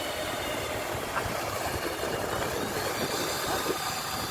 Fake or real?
fake